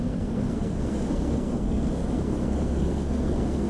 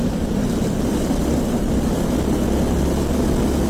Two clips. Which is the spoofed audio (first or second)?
first